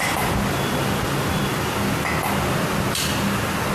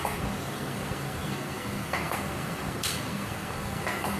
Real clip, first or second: first